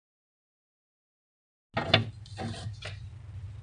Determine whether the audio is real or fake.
real